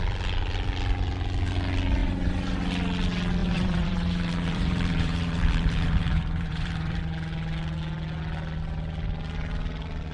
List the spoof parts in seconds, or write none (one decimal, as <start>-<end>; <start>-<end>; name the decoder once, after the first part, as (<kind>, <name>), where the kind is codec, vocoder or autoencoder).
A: 2.0-2.7 (vocoder, BigVGAN v2); 3.4-7.0